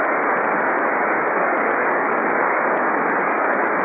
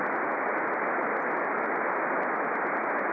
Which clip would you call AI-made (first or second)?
first